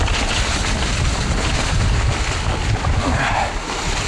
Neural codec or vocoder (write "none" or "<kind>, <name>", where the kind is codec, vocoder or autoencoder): none